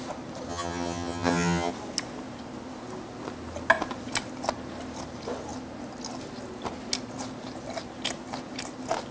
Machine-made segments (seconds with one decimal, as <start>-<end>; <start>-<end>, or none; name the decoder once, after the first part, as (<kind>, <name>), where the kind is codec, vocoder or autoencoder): 0.5-1.7 (vocoder, HiFi-GAN)